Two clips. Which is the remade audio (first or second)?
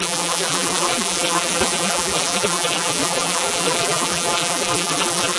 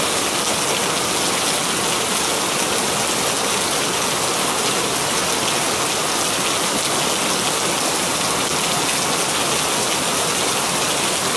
first